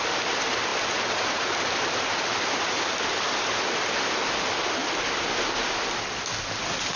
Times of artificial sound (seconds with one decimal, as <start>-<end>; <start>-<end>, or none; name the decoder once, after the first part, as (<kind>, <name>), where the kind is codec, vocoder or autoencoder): none